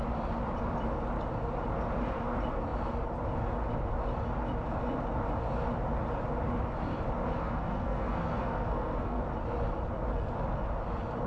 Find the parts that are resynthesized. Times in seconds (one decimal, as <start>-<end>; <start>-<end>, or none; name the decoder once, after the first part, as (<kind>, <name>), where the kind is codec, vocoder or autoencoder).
7.4-9.2 (codec, SNAC)